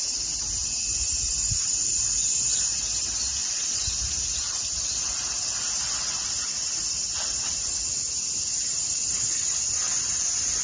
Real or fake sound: real